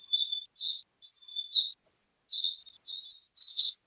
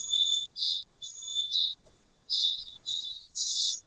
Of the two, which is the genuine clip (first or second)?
first